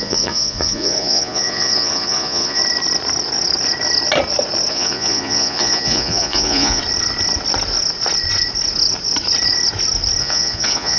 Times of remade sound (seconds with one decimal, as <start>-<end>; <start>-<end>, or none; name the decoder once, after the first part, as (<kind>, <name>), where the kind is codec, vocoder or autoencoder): 0.0-2.6 (vocoder, Vocos); 4.7-6.8; 10.2-11.0